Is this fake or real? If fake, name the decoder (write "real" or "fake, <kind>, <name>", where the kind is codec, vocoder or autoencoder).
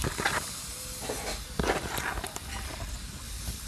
real